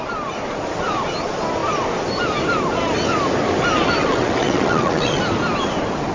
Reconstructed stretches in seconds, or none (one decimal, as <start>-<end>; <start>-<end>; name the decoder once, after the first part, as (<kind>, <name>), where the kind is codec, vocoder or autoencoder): 4.0-5.2 (vocoder, WaveNeXt)